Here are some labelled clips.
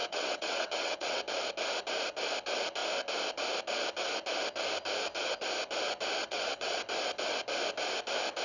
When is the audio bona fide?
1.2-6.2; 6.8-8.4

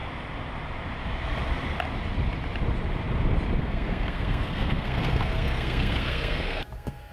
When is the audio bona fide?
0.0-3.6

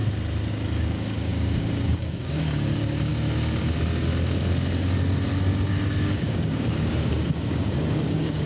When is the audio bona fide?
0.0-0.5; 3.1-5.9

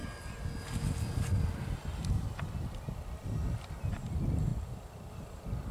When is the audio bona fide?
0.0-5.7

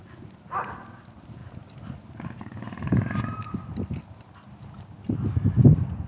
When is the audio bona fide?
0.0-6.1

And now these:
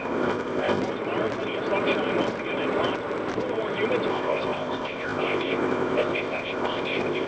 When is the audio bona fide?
0.8-4.1

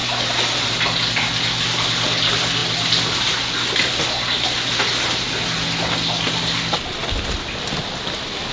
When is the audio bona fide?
0.0-8.5